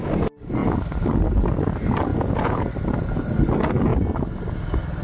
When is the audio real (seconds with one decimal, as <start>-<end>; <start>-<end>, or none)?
0.0-2.1; 2.7-5.0

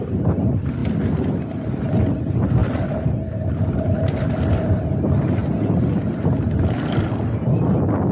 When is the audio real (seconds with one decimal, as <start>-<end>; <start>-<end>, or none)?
0.0-8.1

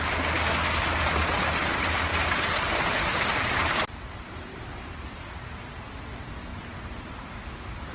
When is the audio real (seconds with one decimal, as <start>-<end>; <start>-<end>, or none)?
0.0-7.9